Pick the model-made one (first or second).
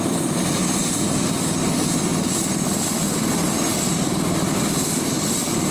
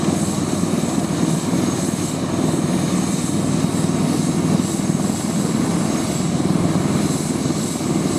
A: first